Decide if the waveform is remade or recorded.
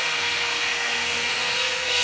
remade